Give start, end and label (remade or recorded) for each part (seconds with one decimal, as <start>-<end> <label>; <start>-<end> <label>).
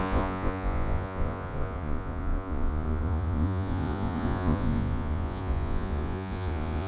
0.0-6.9 remade